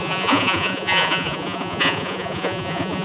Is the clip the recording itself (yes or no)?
no